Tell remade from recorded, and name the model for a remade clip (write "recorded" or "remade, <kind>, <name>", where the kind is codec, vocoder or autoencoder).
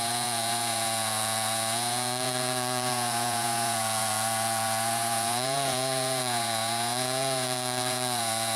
remade, vocoder, Vocos